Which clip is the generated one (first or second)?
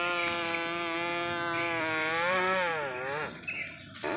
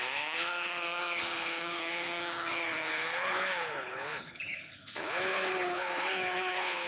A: second